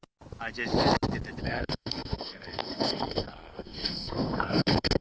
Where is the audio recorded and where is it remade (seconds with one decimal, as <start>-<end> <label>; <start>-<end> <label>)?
0.0-1.4 recorded; 1.4-5.0 remade